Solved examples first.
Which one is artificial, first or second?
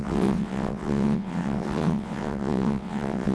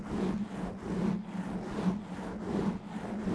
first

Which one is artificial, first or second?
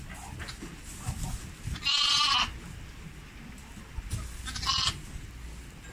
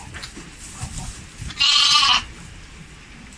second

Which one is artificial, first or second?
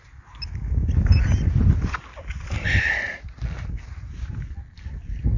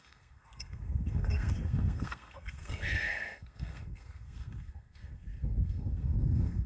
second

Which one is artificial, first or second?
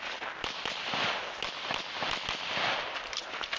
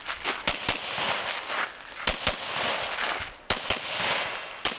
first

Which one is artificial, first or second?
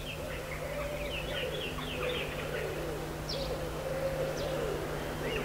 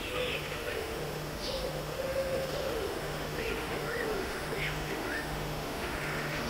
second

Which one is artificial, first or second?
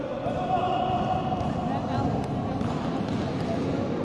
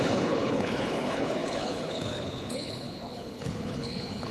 second